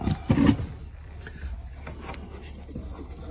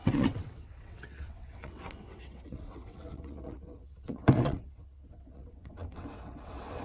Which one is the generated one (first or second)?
second